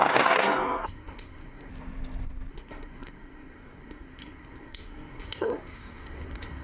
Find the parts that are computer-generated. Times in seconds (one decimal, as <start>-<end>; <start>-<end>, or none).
0.0-1.7; 2.5-6.6